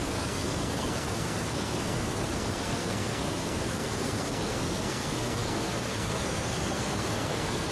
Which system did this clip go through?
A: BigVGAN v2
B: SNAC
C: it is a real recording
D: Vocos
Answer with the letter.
B